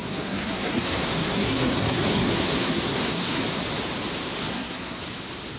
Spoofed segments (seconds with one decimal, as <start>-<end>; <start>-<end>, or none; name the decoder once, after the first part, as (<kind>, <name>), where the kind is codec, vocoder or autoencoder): 0.0-3.4 (codec, SNAC); 4.4-5.0